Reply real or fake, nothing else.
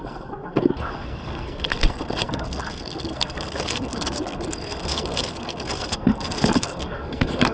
fake